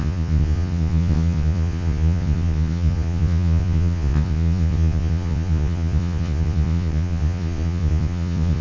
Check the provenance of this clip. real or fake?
fake